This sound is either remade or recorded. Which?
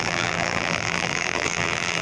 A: remade